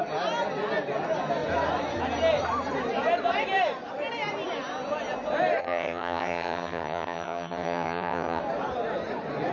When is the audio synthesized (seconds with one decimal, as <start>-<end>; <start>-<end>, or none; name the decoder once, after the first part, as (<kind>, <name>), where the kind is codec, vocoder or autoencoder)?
5.6-8.4 (vocoder, HiFi-GAN)